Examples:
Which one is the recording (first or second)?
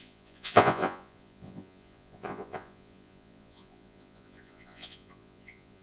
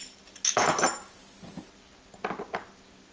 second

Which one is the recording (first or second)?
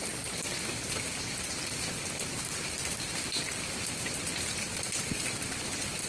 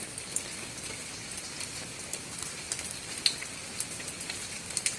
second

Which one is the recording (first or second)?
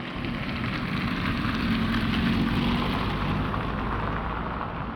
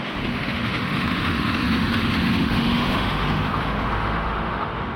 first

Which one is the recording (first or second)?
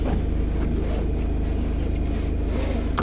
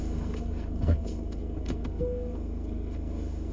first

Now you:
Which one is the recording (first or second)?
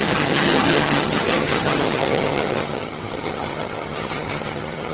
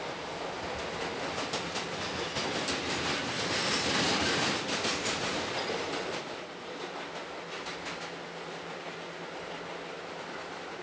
second